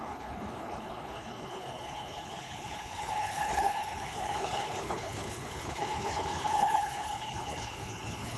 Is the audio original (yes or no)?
no